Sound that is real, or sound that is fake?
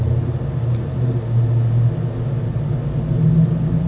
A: real